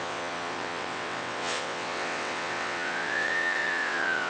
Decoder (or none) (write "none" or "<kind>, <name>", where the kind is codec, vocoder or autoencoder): vocoder, WaveNeXt